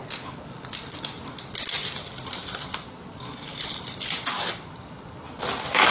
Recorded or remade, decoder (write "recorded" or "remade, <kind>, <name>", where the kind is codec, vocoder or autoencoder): recorded